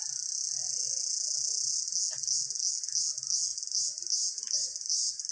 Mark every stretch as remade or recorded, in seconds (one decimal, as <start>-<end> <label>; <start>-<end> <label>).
0.0-5.3 recorded